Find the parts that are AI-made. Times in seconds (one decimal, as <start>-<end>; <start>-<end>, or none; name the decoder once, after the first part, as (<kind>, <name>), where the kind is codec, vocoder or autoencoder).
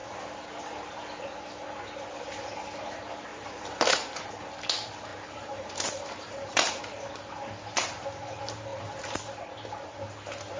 3.3-4.3 (vocoder, BigVGAN v2); 5.1-6.8; 8.7-9.2